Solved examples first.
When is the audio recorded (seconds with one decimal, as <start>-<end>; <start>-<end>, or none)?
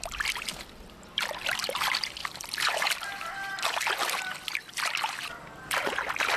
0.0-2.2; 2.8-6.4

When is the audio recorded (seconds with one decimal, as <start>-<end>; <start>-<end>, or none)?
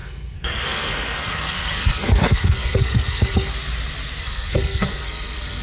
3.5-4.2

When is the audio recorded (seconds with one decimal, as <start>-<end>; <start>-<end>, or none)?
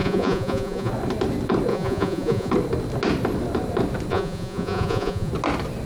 0.9-1.7; 2.5-4.1; 5.3-5.9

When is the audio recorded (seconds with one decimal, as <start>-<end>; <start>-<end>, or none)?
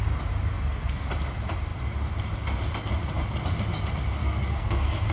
0.0-0.5; 1.1-4.2